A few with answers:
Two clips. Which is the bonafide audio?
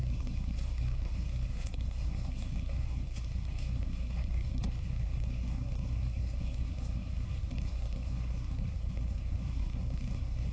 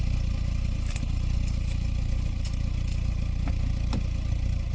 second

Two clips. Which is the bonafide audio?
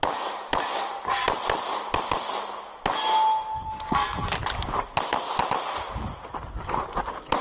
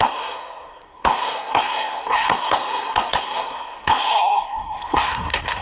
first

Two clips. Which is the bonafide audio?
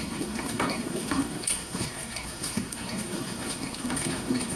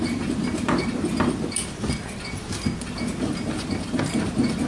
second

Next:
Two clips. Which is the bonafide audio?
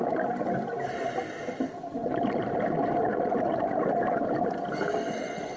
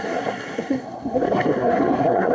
first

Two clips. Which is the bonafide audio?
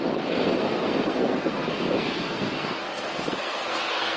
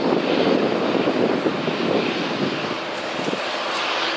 second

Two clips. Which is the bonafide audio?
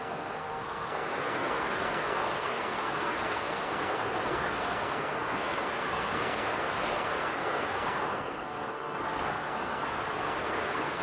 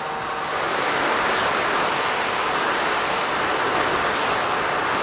second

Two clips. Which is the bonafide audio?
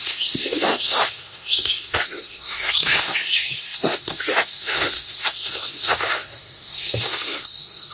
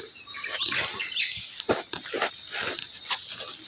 second